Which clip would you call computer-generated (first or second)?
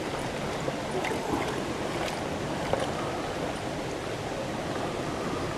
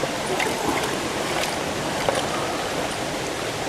second